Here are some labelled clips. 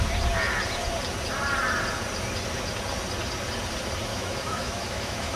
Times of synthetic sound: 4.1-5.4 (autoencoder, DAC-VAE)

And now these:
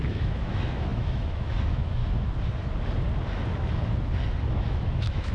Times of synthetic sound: 0.0-2.0 (autoencoder, DAC-VAE); 4.5-5.3

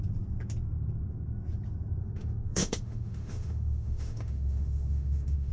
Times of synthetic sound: 2.0-5.5 (autoencoder, DAC-VAE)

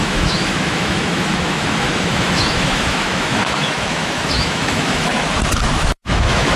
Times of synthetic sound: 0.0-5.1 (autoencoder, DAC-VAE); 5.8-6.6

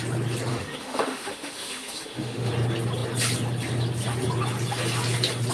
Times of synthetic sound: 0.5-2.5 (autoencoder, DAC-VAE)

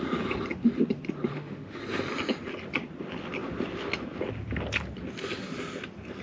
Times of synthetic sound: 1.3-1.8 (autoencoder, DAC-VAE)